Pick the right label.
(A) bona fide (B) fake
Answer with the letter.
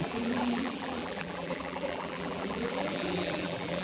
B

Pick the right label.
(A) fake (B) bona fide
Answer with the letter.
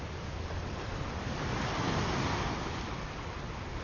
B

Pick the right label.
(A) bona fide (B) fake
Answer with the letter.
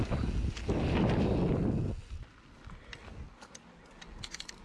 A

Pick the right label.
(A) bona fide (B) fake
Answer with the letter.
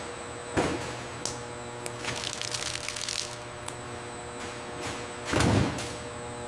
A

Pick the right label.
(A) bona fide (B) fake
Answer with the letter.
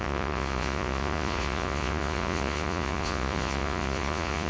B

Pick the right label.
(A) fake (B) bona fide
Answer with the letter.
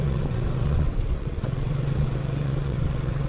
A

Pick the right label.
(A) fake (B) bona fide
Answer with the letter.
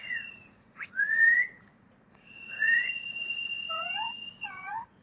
A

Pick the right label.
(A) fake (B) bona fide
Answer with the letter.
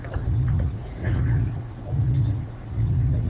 A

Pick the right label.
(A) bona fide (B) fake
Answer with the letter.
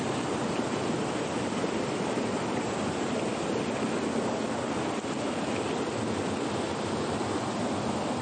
A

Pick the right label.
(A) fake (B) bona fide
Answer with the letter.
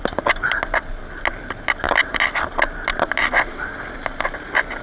B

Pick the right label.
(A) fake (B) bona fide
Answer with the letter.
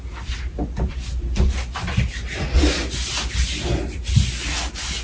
B